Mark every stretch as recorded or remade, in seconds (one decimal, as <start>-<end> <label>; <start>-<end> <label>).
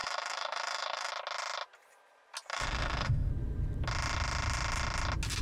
0.0-1.1 remade; 1.1-2.5 recorded; 2.5-3.3 remade; 3.3-5.4 recorded